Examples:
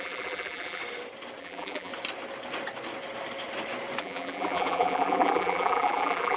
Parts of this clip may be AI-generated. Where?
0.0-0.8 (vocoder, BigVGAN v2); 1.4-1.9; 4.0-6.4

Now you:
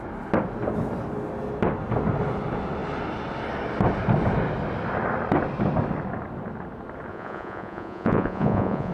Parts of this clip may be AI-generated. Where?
7.1-8.9 (vocoder, Vocos)

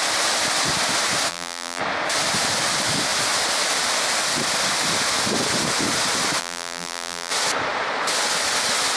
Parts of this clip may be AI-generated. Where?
1.3-1.8 (vocoder, BigVGAN v2); 6.4-7.3

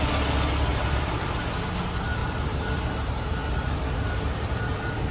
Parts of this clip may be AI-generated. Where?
0.7-1.4 (vocoder, BigVGAN v2); 2.2-2.8

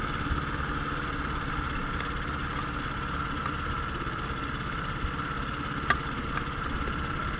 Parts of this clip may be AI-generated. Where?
none